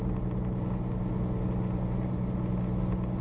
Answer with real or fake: real